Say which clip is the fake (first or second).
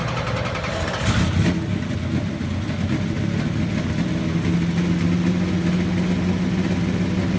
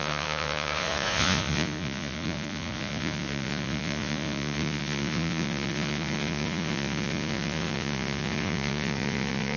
second